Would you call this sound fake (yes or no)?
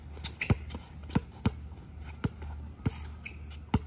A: no